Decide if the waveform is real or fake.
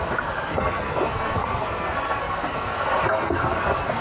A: fake